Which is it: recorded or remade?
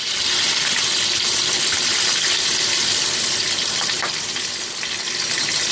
recorded